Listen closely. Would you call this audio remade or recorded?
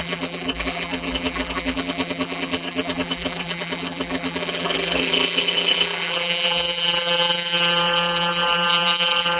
remade